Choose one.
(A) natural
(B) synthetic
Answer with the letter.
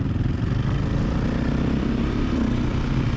B